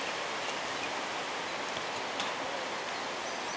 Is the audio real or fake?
real